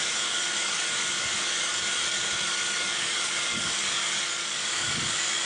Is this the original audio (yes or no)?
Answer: no